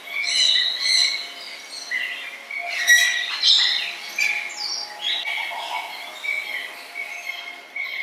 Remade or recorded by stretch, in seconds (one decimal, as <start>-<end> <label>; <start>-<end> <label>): 0.0-8.0 recorded